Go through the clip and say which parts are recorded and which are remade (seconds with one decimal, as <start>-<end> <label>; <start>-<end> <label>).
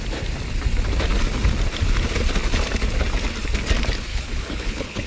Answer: 0.0-4.1 recorded; 4.1-5.1 remade